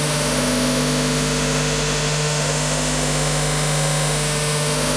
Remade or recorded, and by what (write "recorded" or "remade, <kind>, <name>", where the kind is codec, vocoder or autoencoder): remade, autoencoder, DAC-VAE